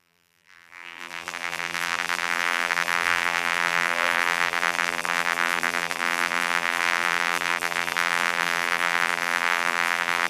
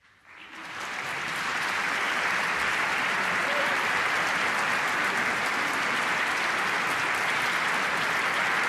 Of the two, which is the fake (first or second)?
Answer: first